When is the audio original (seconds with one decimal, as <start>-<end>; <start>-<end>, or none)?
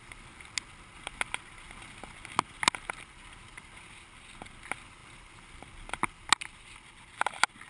0.0-7.7